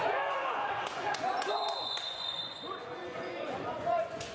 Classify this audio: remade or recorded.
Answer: remade